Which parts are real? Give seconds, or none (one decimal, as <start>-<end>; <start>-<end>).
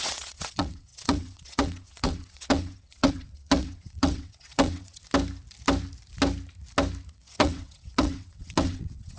5.0-7.1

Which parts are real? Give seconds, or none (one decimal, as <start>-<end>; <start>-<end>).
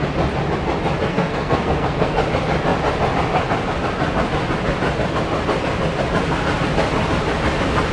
0.0-1.1; 2.2-7.9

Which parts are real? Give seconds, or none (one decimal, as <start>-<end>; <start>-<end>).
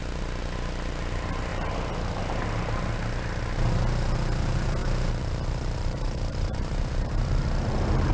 0.0-4.8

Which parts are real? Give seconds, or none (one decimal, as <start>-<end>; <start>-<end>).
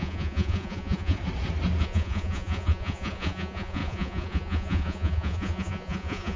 1.2-1.8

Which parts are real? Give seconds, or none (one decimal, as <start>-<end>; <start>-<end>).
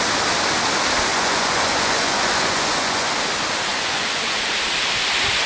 0.0-1.1; 3.1-3.7; 4.5-5.5